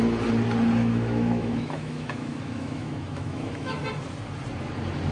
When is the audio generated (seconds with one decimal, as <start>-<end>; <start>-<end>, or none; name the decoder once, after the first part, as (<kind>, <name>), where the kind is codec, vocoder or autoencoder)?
0.8-3.8 (autoencoder, DAC-VAE)